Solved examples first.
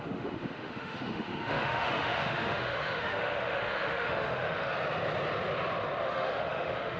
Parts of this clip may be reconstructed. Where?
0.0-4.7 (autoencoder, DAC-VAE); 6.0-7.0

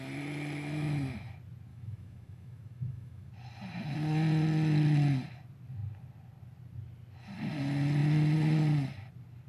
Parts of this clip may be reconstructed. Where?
1.7-3.3 (autoencoder, DAC-VAE)